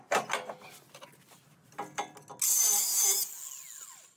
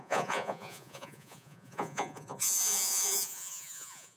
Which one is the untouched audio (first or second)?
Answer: first